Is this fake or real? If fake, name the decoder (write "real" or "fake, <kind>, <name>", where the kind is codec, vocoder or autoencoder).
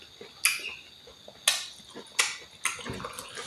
real